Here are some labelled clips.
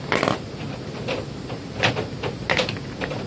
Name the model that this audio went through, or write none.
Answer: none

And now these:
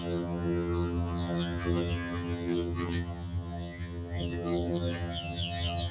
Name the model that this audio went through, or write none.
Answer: vocoder, HiFi-GAN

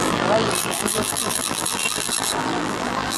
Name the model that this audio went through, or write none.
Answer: vocoder, BigVGAN v2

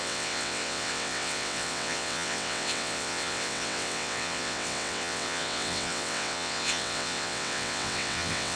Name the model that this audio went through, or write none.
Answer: vocoder, WaveNeXt